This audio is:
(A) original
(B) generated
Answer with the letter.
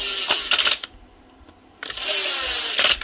A